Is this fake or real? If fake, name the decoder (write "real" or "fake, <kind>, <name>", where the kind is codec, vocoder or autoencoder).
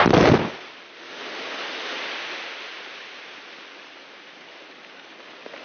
real